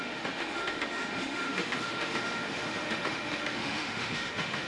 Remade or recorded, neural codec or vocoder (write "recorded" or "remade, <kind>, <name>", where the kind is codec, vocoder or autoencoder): remade, autoencoder, DAC-VAE